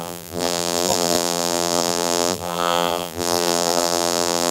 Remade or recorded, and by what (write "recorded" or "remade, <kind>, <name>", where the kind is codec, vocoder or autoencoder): remade, vocoder, BigVGAN v2